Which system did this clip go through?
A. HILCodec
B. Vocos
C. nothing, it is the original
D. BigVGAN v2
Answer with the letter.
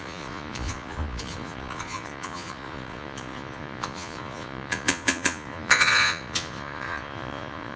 B